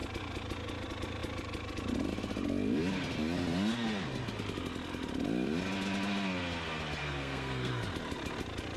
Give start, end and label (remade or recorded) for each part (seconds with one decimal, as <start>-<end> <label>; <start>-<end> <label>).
0.0-7.0 recorded; 7.0-7.7 remade; 7.7-8.8 recorded